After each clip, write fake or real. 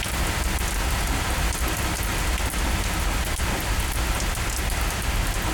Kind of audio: real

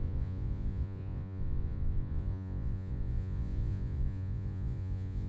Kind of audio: fake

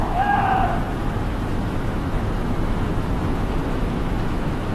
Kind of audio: fake